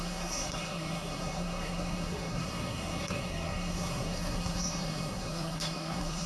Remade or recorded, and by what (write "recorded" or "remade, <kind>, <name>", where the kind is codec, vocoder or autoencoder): remade, codec, SNAC